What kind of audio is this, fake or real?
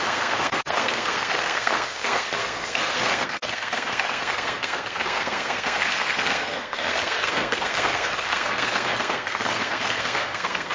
fake